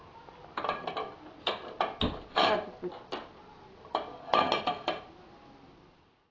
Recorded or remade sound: recorded